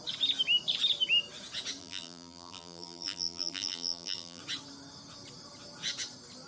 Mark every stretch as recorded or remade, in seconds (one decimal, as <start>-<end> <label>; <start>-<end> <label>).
0.0-1.8 recorded; 1.8-4.4 remade; 4.4-6.5 recorded